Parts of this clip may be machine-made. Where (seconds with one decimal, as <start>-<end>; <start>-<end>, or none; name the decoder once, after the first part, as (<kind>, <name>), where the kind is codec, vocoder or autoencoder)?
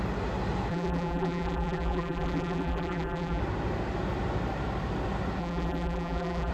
0.7-3.4 (vocoder, BigVGAN v2); 5.4-6.5